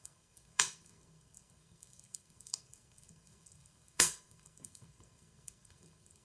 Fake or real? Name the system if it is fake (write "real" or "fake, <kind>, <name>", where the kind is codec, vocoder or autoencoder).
fake, codec, SNAC